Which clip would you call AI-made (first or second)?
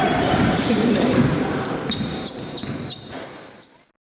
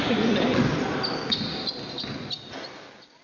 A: first